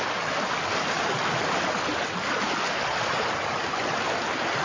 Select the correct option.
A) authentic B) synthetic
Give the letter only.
A